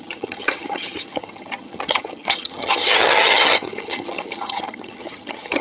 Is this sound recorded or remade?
remade